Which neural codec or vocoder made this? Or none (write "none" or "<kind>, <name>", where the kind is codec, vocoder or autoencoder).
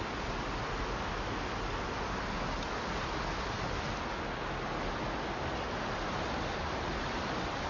none